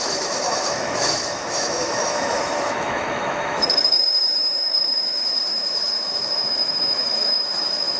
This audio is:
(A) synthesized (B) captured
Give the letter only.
A